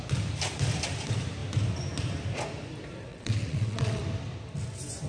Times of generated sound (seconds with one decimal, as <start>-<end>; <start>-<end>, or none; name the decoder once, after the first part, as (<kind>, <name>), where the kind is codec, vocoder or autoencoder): 3.1-4.0 (vocoder, WaveNeXt)